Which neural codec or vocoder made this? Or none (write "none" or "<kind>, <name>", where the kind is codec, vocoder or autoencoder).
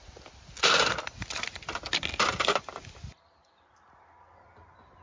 none